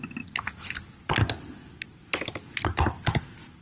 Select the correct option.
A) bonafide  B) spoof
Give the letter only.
A